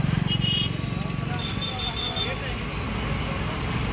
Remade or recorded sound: recorded